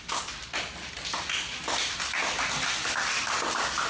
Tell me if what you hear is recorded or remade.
remade